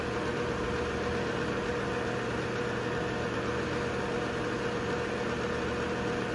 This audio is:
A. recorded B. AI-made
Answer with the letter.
A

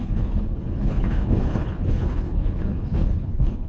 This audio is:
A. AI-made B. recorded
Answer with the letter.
A